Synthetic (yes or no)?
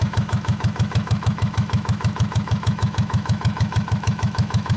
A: yes